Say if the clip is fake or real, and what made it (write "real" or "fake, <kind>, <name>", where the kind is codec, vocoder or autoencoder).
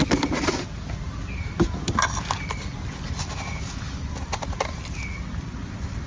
real